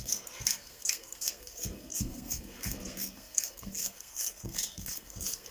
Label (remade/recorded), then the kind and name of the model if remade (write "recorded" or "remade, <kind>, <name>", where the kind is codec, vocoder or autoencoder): remade, codec, SNAC